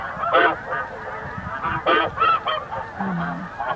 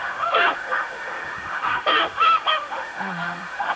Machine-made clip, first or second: second